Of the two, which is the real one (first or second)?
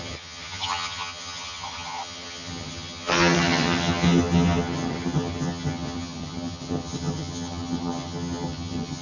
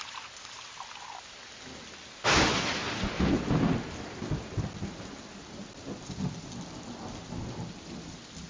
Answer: second